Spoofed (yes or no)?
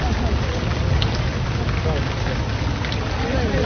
no